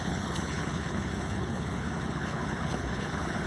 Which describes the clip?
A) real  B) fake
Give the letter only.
B